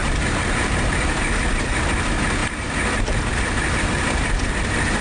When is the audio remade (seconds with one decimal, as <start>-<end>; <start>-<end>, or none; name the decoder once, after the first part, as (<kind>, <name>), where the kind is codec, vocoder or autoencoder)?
0.0-5.0 (vocoder, BigVGAN v2)